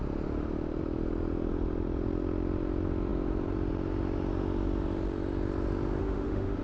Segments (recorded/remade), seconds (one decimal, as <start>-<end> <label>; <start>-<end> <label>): 0.0-6.0 recorded; 6.0-6.6 remade